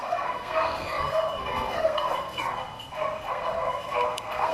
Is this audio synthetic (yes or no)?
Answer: yes